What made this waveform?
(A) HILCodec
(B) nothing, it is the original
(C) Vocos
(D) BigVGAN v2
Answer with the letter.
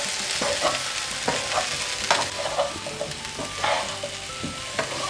B